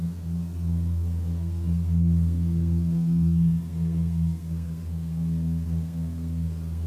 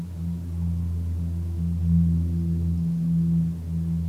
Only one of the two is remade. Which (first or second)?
first